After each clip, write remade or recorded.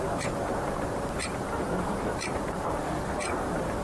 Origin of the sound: remade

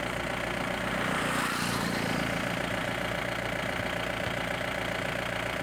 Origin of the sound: remade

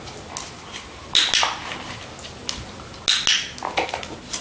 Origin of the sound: recorded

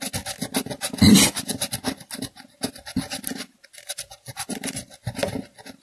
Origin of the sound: recorded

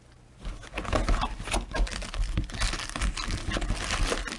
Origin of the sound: recorded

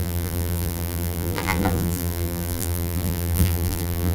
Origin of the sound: remade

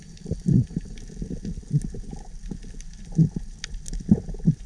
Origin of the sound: recorded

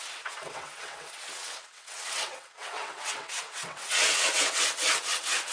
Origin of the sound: remade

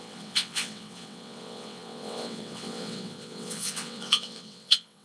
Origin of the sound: remade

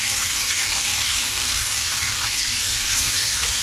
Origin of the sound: remade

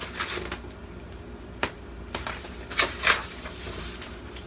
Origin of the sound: remade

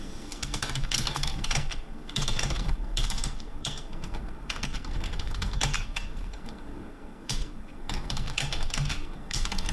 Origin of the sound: remade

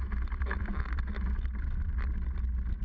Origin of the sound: recorded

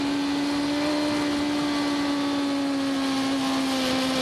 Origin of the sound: recorded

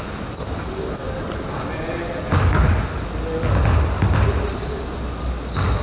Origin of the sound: recorded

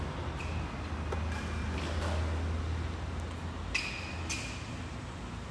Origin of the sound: recorded